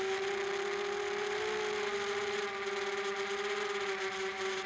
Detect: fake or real fake